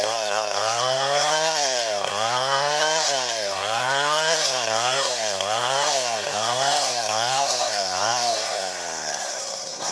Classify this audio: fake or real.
fake